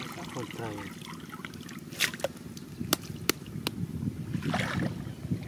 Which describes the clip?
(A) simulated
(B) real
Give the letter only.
B